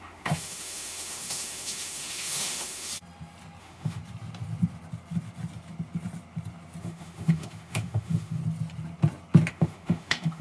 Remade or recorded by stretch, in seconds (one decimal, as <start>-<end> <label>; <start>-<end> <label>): 0.0-2.9 remade; 2.9-3.6 recorded; 3.6-4.0 remade; 4.0-6.8 recorded; 6.8-8.4 remade; 8.4-9.5 recorded; 9.5-10.4 remade